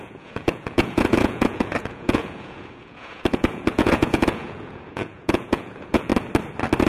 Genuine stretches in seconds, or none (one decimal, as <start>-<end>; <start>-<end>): 6.1-6.9